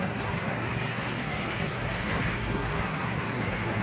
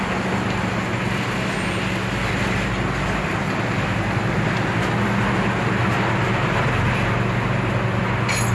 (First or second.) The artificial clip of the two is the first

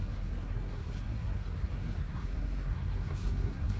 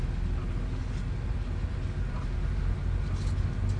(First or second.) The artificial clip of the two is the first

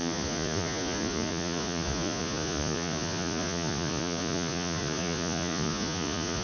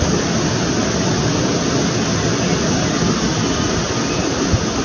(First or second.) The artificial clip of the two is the first